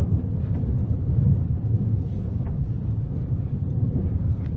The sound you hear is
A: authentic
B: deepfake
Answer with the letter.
A